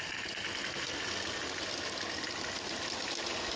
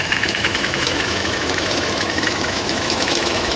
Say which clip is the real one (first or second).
first